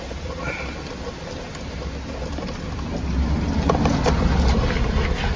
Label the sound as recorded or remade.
recorded